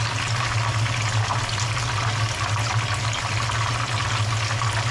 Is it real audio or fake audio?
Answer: real